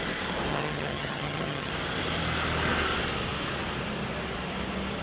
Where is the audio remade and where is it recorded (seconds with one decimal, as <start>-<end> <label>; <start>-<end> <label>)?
0.0-0.5 recorded; 0.5-1.7 remade; 1.7-5.0 recorded